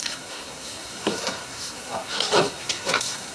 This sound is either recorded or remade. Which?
remade